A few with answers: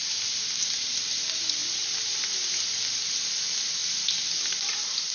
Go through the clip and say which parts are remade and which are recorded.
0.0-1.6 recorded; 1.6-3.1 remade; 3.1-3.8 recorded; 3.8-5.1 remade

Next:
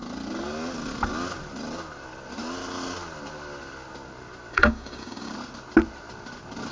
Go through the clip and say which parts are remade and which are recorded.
0.0-4.5 recorded; 4.5-5.3 remade; 5.3-6.7 recorded

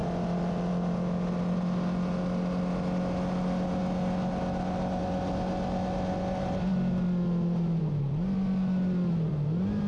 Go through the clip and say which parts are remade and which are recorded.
0.0-9.9 recorded

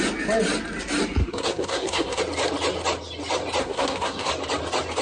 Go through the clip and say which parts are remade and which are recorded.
0.0-1.2 recorded; 1.2-2.2 remade; 2.2-3.6 recorded; 3.6-4.3 remade; 4.3-5.0 recorded

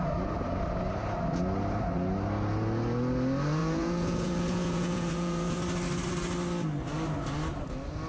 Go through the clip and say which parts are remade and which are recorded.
0.0-3.6 recorded; 3.6-5.6 remade; 5.6-8.1 recorded

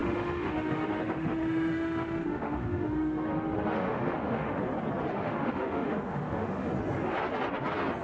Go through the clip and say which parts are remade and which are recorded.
0.0-4.6 remade; 4.6-5.1 recorded; 5.1-6.7 remade; 6.7-8.0 recorded

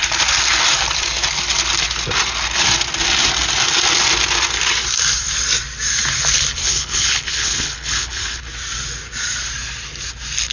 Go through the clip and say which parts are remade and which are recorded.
0.0-6.6 recorded; 6.6-8.4 remade; 8.4-10.5 recorded